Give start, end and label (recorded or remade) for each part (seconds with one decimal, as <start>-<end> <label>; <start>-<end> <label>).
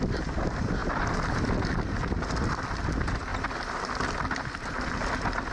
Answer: 0.0-5.5 recorded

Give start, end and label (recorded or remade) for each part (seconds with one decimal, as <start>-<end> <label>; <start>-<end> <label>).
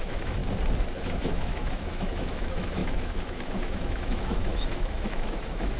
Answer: 0.0-0.4 remade; 0.4-1.0 recorded; 1.0-5.8 remade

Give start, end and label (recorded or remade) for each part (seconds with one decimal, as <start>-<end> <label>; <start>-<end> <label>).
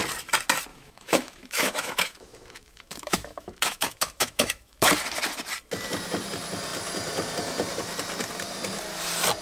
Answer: 0.0-0.7 recorded; 0.7-4.9 remade; 4.9-9.4 recorded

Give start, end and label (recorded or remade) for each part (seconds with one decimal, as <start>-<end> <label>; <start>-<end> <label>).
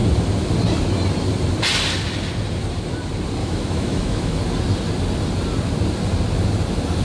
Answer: 0.0-3.4 recorded; 3.4-4.4 remade; 4.4-7.0 recorded